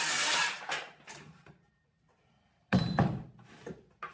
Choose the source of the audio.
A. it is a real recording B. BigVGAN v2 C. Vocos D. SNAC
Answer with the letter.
B